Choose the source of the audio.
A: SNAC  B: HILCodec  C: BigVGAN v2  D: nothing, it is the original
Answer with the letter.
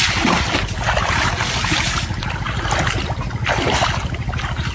D